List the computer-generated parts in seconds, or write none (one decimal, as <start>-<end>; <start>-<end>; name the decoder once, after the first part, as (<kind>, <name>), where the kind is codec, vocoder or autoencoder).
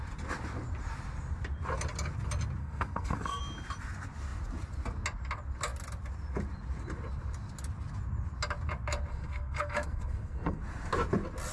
2.6-3.4 (codec, SNAC); 9.1-10.6